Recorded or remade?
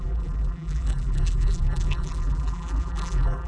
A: remade